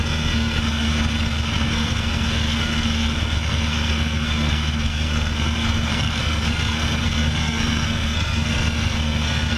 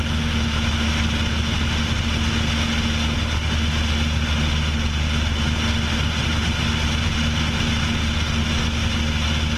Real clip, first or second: second